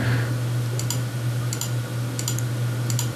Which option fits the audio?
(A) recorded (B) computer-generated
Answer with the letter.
A